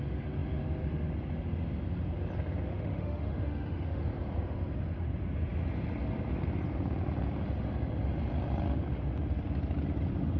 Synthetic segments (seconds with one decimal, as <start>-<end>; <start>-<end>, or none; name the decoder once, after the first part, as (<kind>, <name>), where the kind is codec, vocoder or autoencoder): 2.7-4.0 (autoencoder, DAC-VAE)